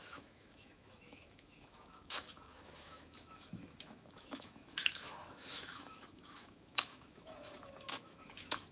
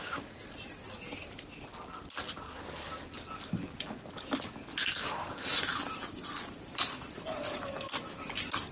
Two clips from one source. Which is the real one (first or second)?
second